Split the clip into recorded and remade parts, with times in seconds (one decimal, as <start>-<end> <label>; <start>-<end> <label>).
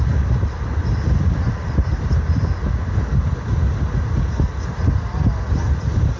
0.0-6.2 recorded